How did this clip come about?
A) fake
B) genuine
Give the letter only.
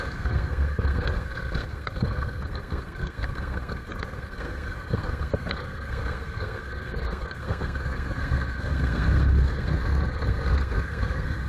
A